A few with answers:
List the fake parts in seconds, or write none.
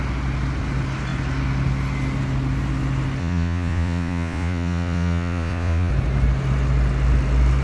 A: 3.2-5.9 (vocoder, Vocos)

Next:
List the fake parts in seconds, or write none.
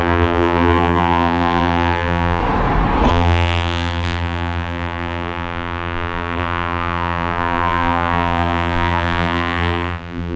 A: 0.0-2.4 (vocoder, BigVGAN v2); 3.1-10.4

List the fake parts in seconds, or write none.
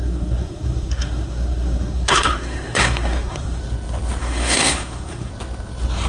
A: 0.0-3.6 (codec, SNAC); 4.2-5.3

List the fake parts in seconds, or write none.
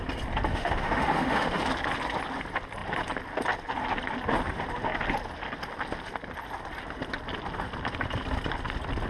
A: 0.5-1.6 (autoencoder, DAC-VAE)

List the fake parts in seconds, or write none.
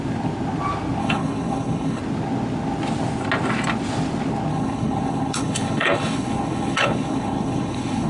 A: 1.0-2.0 (codec, HILCodec); 4.5-8.1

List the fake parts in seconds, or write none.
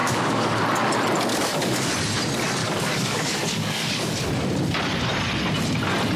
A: 0.0-0.6 (codec, DAC); 1.3-1.9; 2.6-4.3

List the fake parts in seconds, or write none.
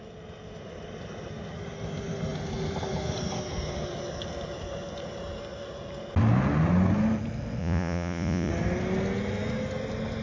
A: 7.6-8.5 (vocoder, Vocos)